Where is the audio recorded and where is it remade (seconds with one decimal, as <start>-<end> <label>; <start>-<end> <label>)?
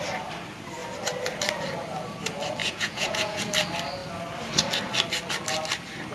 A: 0.0-2.6 recorded; 2.6-3.4 remade; 3.4-6.1 recorded